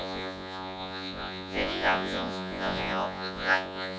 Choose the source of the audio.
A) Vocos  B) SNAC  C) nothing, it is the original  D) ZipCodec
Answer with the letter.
A